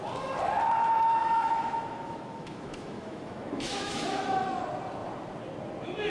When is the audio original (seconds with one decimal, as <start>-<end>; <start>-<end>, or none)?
0.0-1.2; 4.6-6.1